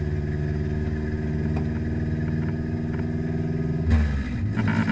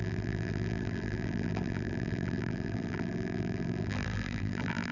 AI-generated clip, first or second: second